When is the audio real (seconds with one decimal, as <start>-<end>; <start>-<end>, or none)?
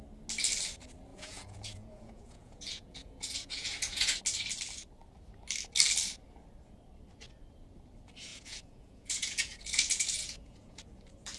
0.0-1.1; 4.2-8.3; 10.8-11.4